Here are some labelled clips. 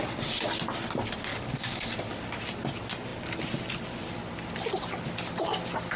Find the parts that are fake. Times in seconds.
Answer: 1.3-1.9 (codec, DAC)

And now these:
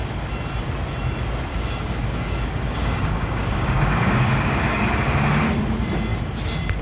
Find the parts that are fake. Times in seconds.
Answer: 1.5-5.6 (codec, DAC)

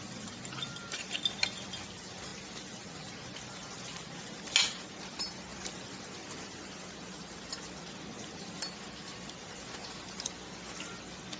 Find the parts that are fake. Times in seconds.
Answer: none

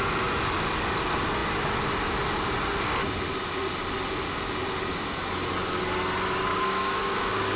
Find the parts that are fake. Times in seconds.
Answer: 6.5-7.6 (codec, DAC)

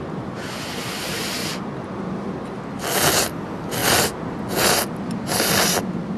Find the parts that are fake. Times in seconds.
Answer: none

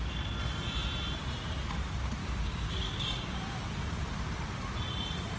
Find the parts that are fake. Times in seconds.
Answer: 2.2-3.4 (codec, DAC)